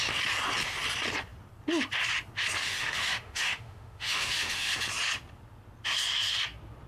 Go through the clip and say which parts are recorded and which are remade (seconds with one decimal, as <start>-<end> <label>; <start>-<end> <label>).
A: 0.0-2.6 recorded; 2.6-4.7 remade; 4.7-6.9 recorded